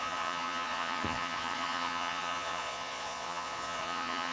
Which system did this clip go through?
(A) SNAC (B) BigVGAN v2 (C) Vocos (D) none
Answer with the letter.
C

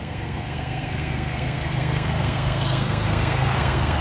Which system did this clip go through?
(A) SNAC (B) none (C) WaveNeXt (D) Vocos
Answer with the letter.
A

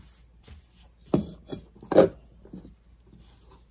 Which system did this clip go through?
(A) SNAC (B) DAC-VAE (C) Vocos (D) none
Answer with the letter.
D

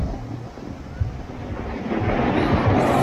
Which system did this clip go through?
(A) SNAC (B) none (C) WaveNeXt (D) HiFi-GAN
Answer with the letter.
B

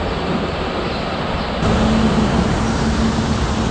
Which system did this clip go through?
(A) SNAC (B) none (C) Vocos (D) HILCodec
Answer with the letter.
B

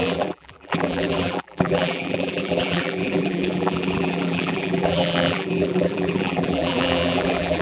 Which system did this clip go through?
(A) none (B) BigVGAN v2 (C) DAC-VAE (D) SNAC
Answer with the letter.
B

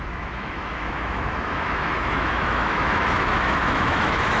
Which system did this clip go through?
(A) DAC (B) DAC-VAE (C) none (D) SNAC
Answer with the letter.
B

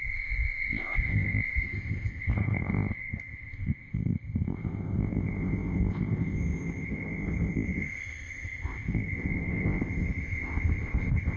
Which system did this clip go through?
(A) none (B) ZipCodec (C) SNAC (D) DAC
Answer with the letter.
B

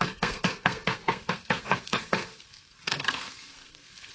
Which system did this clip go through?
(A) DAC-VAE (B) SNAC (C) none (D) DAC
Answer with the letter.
B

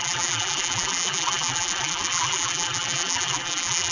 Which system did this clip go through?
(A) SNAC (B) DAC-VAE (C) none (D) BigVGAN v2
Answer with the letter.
D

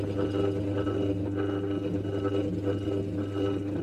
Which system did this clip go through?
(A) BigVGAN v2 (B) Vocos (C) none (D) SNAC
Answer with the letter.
C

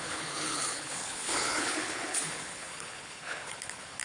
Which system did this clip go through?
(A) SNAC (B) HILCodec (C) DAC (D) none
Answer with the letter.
B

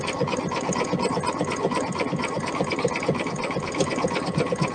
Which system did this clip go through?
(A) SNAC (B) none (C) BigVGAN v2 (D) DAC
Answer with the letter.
B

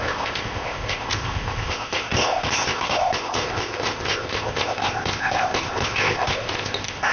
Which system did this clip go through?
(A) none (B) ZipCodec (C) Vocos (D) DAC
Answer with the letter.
B